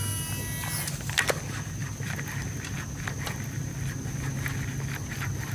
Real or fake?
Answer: real